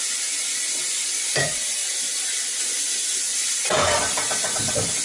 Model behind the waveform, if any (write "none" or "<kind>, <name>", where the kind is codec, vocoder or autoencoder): none